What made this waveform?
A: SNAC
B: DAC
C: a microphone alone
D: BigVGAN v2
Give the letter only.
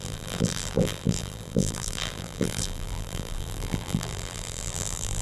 D